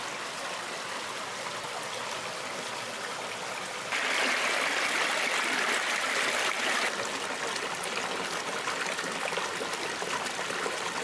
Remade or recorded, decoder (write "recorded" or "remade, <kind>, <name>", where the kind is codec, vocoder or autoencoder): recorded